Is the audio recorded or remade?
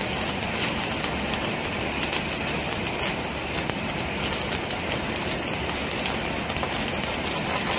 recorded